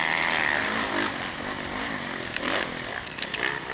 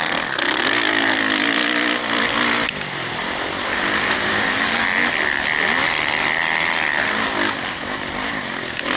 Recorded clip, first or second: first